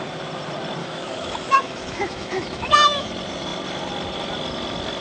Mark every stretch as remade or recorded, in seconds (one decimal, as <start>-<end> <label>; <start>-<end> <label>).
0.0-0.8 recorded; 0.8-3.1 remade; 3.1-5.0 recorded